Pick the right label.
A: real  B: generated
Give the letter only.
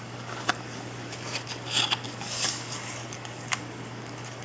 B